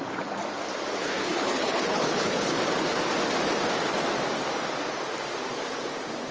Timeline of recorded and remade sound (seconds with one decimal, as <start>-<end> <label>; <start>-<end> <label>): 0.0-1.0 recorded; 1.0-2.6 remade; 2.6-6.3 recorded